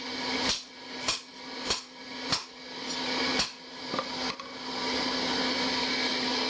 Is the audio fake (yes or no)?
no